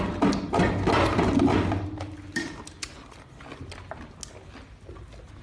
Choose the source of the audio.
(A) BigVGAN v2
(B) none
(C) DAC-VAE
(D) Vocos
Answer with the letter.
B